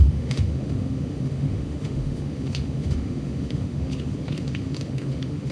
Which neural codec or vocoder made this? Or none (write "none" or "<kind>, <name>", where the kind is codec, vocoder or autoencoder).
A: autoencoder, DAC-VAE